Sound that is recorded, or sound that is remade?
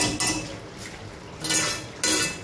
recorded